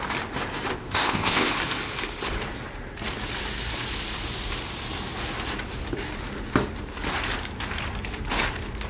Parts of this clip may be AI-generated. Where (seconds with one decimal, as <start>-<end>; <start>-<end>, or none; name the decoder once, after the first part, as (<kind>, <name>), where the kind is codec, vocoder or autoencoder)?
0.7-1.5 (codec, ZipCodec)